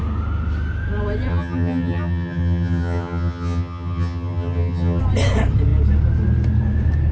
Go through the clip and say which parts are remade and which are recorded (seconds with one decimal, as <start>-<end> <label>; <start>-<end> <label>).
0.0-1.3 recorded; 1.3-5.0 remade; 5.0-7.1 recorded